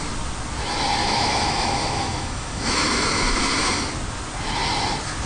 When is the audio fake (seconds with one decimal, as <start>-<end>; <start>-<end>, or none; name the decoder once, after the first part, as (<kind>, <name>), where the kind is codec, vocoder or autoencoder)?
1.0-3.7 (autoencoder, DAC-VAE)